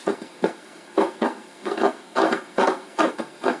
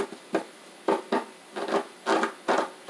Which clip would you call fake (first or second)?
first